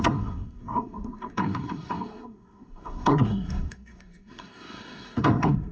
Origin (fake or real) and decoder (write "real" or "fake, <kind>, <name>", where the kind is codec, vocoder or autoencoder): fake, codec, SNAC